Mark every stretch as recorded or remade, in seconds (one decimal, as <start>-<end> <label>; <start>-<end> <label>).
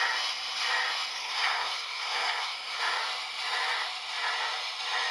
0.0-1.1 recorded; 1.1-2.8 remade; 2.8-5.1 recorded